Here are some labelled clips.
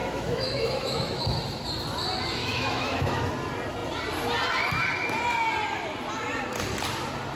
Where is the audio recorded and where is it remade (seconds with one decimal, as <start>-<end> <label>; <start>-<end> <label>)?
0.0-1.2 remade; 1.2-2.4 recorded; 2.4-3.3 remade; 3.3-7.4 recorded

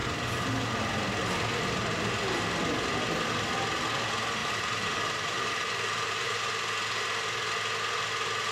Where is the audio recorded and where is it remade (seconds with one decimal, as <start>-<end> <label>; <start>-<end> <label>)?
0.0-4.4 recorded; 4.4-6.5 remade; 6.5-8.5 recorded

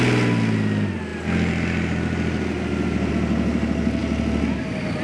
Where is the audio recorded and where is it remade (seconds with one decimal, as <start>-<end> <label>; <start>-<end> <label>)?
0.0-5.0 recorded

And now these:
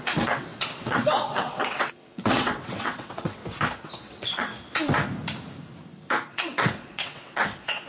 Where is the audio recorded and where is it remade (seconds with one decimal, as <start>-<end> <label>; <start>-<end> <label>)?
0.0-3.4 remade; 3.4-4.0 recorded; 4.0-4.5 remade; 4.5-6.3 recorded; 6.3-7.9 remade

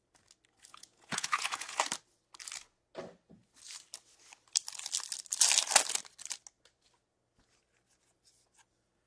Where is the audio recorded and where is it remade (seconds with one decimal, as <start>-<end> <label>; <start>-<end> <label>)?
0.0-0.7 recorded; 0.7-1.8 remade; 1.8-9.1 recorded

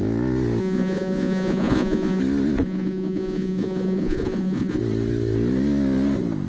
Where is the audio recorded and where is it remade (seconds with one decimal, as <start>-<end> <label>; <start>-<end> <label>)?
0.0-0.6 recorded; 0.6-2.2 remade; 2.2-2.6 recorded; 2.6-4.8 remade; 4.8-6.5 recorded

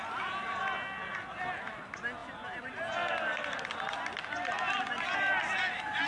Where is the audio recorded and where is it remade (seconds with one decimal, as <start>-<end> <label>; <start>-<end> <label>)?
0.0-6.1 recorded

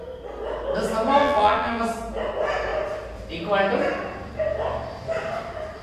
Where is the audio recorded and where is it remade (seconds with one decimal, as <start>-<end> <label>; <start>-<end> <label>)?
0.0-1.2 recorded; 1.2-1.8 remade; 1.8-5.8 recorded